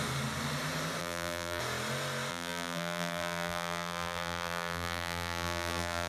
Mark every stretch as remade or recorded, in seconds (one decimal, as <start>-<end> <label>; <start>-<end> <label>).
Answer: 0.0-1.0 recorded; 1.0-1.6 remade; 1.6-2.3 recorded; 2.3-6.1 remade